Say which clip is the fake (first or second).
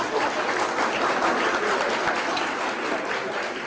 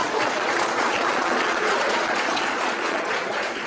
second